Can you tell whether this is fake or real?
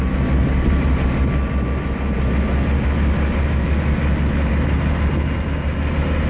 real